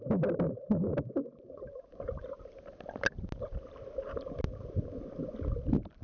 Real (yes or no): yes